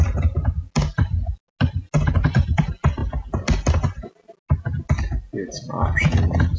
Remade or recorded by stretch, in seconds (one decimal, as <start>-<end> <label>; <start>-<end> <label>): 0.0-6.6 recorded